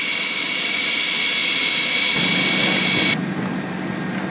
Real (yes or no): no